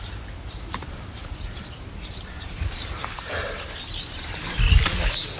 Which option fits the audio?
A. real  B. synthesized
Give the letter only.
B